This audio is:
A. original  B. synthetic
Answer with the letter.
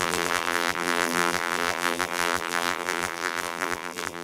B